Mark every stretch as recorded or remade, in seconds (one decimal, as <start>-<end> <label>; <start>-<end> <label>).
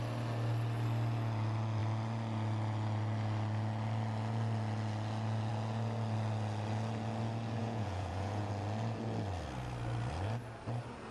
0.0-7.6 recorded; 7.6-8.5 remade; 8.5-11.1 recorded